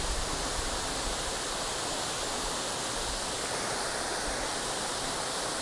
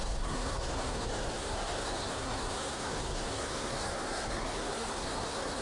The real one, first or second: first